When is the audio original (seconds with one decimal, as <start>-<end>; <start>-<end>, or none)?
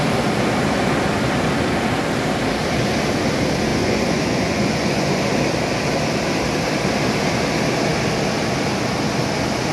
0.0-3.7; 5.2-9.7